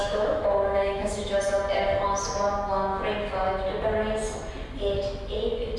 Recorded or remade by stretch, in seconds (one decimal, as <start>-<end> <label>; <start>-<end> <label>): 0.0-1.4 remade; 1.4-5.8 recorded